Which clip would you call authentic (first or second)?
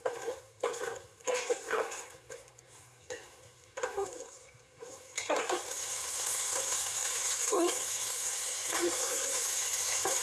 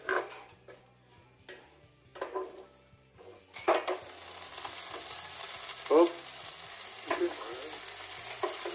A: second